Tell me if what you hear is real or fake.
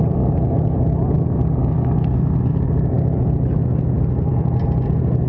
real